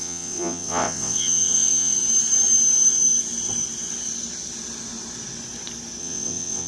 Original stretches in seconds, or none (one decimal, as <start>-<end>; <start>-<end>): 2.0-6.0

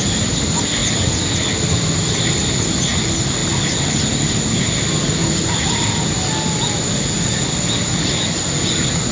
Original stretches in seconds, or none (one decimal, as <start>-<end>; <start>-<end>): 0.0-9.1

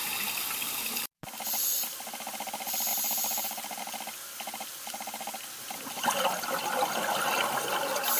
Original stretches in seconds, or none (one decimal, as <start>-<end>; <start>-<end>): 0.0-2.9; 3.8-8.2

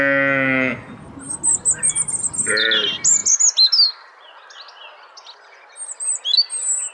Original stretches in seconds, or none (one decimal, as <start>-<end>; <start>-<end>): 0.0-6.9

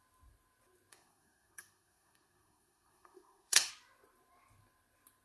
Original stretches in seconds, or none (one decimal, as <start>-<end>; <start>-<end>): 0.0-0.9; 3.7-5.2